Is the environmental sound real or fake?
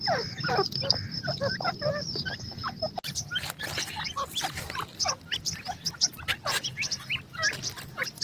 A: real